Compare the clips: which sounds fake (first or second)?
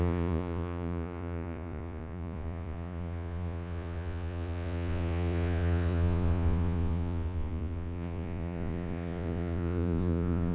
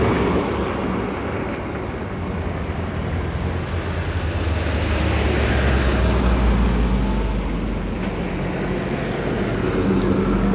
first